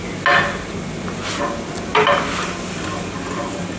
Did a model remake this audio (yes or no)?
no